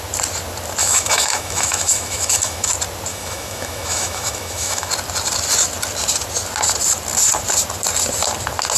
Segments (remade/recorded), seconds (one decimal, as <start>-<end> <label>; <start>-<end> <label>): 0.0-0.8 recorded; 0.8-2.7 remade; 2.7-3.1 recorded; 3.1-4.9 remade; 4.9-8.8 recorded